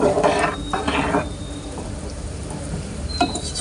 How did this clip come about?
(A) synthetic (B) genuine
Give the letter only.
A